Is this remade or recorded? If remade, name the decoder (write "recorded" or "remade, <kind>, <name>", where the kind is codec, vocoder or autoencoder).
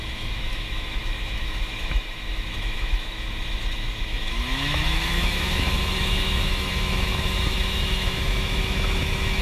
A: remade, autoencoder, DAC-VAE